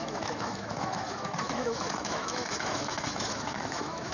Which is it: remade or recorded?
remade